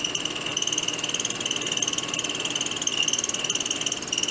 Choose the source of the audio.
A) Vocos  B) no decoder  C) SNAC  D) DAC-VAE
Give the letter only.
B